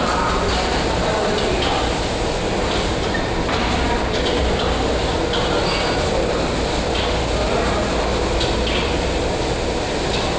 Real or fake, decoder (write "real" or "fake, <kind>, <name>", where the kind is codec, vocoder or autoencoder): real